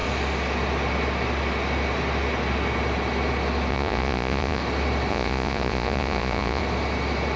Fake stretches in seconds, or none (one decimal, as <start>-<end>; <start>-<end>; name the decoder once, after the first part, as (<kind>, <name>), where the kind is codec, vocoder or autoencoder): 3.7-4.6 (vocoder, Vocos); 5.1-6.6